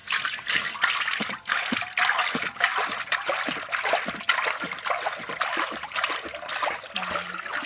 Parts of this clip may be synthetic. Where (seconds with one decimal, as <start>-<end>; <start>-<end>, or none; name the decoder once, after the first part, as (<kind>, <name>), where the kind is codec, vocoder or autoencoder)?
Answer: none